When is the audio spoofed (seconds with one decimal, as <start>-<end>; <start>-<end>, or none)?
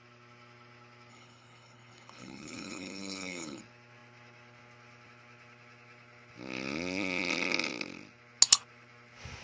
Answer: 1.1-3.6